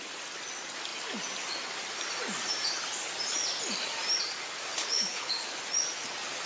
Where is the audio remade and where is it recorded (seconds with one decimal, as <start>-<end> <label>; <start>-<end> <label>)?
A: 0.0-4.7 recorded; 4.7-5.3 remade; 5.3-6.5 recorded